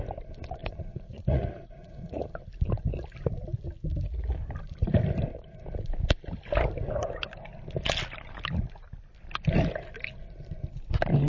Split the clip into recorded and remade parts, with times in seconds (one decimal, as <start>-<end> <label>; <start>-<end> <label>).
0.0-0.6 recorded; 0.6-2.4 remade; 2.4-11.3 recorded